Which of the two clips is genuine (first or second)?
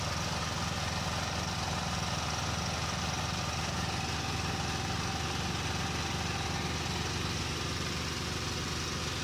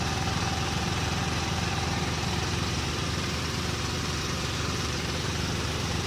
first